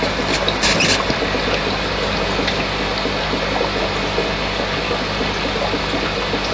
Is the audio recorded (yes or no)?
yes